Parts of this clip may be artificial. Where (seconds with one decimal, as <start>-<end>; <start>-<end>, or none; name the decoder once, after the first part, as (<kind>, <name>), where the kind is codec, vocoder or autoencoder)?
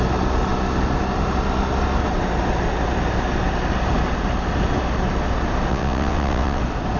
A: 5.7-6.6 (vocoder, WaveNeXt)